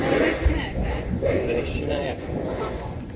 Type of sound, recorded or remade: remade